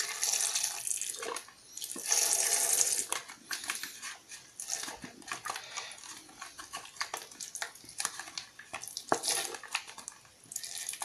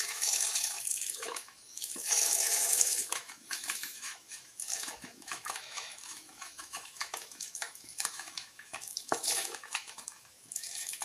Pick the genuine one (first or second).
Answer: first